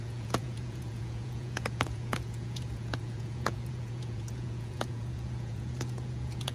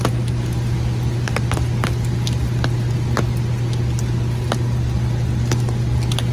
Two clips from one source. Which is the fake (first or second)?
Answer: first